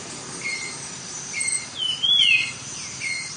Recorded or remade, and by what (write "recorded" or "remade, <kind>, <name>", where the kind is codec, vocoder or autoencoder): recorded